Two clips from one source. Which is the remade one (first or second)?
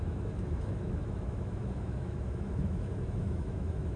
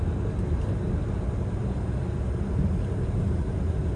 first